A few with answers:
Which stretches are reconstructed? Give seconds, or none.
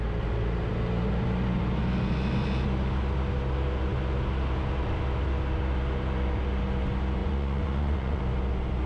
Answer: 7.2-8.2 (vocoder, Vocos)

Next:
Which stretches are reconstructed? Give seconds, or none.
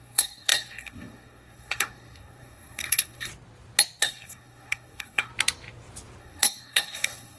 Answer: 0.0-3.3 (codec, SNAC); 4.0-5.3; 6.2-7.4